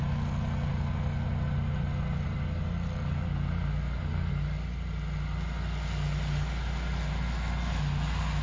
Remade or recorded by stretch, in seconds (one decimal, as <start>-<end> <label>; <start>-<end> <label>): 0.0-8.4 recorded